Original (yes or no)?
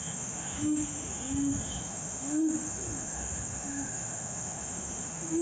no